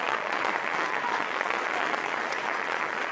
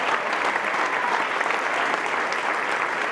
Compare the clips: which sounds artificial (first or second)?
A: first